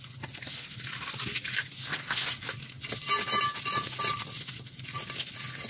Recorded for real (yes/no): yes